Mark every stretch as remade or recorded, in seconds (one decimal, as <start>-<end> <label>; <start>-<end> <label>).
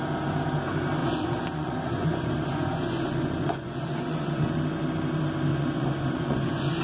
0.0-1.0 recorded; 1.0-4.6 remade; 4.6-5.5 recorded; 5.5-6.8 remade